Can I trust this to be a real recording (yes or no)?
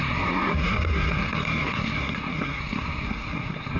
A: no